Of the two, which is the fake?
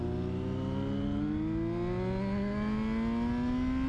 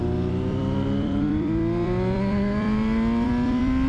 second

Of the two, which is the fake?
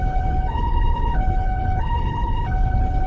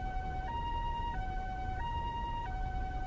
first